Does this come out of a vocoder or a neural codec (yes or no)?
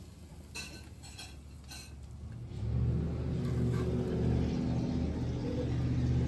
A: no